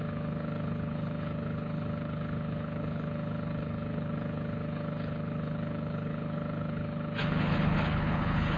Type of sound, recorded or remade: remade